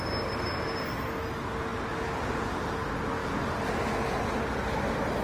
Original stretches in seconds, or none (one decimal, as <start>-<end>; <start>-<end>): 0.0-5.2